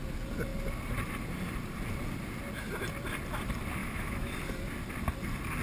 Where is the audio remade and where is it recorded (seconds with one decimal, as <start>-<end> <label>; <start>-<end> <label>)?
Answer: 0.0-3.8 recorded; 3.8-4.3 remade; 4.3-5.6 recorded